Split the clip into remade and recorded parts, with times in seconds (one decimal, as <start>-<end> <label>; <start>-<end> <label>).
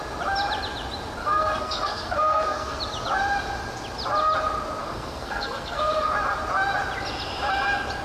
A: 0.0-1.2 recorded; 1.2-2.8 remade; 2.8-4.8 recorded; 4.8-6.1 remade; 6.1-8.0 recorded